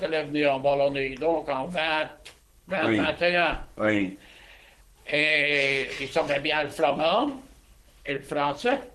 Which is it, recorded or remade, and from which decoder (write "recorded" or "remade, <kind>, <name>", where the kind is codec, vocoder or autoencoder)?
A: remade, codec, HILCodec